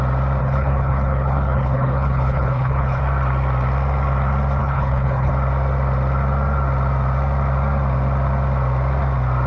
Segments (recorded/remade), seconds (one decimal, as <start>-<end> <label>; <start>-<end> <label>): 0.0-0.4 recorded; 0.4-3.0 remade; 3.0-4.6 recorded; 4.6-5.3 remade; 5.3-9.5 recorded